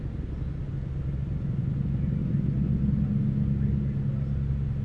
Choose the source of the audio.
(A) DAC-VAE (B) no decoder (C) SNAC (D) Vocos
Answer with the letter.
B